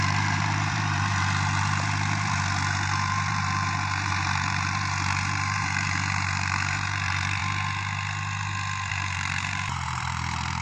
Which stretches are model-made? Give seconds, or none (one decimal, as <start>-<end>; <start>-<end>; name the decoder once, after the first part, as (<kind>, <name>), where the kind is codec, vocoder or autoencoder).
0.0-7.4 (vocoder, BigVGAN v2); 8.9-10.6